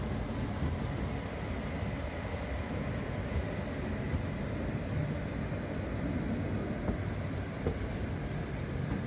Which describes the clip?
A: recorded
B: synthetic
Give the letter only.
A